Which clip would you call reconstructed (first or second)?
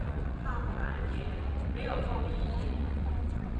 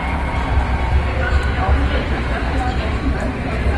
first